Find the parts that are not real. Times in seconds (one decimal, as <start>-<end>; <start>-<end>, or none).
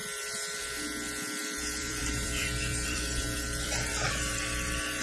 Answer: 0.0-0.6; 1.4-4.4